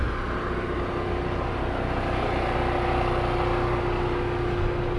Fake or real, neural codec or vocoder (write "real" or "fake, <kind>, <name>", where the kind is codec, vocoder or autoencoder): real